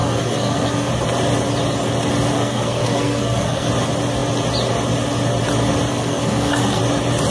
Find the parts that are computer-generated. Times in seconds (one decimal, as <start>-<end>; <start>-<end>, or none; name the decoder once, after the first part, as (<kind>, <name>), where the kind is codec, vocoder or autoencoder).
0.0-0.9 (codec, SNAC); 2.3-3.7; 5.9-6.8

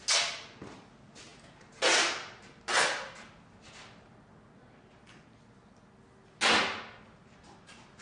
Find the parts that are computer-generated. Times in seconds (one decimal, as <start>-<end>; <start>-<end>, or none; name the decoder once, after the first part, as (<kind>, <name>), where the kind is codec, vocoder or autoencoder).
none

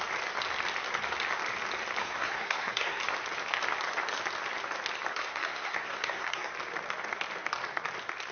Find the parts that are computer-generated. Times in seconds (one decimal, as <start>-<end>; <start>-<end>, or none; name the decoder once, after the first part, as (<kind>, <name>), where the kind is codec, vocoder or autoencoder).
2.0-3.0 (codec, SNAC); 5.1-6.5

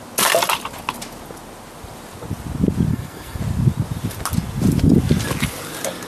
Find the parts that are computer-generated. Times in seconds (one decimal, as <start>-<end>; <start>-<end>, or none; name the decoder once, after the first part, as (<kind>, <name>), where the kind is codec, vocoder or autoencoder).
2.9-3.4 (codec, SNAC)

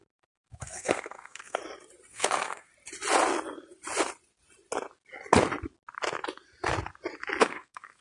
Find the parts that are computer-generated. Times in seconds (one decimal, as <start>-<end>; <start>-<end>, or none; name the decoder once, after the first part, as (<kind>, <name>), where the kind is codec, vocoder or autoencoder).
0.0-1.6 (codec, SNAC); 2.1-2.7; 7.4-8.0

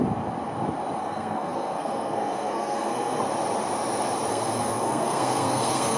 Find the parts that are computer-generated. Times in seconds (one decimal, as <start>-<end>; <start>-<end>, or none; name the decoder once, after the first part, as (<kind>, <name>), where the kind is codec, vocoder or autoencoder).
1.0-3.2 (codec, SNAC); 4.3-6.0